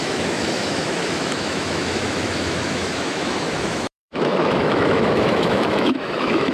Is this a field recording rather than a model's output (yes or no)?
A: no